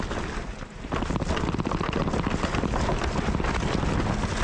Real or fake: real